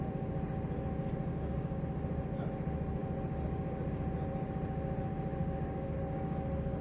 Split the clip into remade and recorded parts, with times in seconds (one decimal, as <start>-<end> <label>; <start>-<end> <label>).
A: 0.0-1.3 recorded; 1.3-1.8 remade; 1.8-5.4 recorded; 5.4-6.8 remade